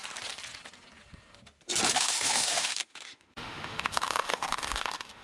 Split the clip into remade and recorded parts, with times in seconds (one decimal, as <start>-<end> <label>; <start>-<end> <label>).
0.0-1.9 recorded; 1.9-5.2 remade